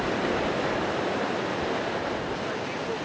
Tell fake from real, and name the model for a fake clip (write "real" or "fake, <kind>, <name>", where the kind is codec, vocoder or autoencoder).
real